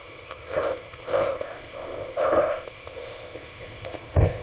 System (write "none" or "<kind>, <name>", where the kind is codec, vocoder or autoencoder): codec, ZipCodec